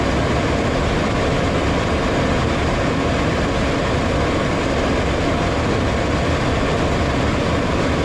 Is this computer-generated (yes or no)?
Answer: no